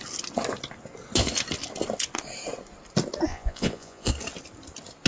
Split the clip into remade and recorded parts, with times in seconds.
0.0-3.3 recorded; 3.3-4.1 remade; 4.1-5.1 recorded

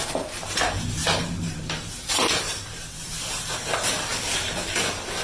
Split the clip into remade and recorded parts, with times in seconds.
0.0-1.0 recorded; 1.0-3.5 remade; 3.5-5.2 recorded